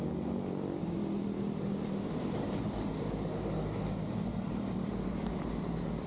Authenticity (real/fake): fake